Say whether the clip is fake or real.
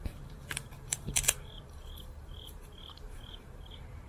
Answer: fake